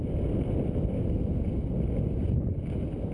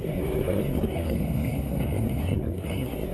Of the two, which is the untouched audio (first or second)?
first